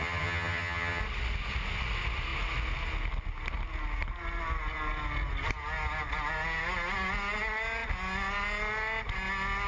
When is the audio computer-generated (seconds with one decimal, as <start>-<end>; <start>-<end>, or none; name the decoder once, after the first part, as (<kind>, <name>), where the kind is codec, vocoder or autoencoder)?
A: 0.0-1.0 (vocoder, HiFi-GAN)